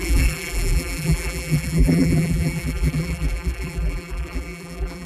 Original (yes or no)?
no